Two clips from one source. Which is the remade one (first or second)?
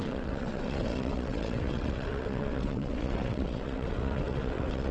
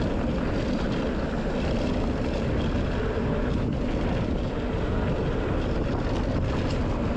first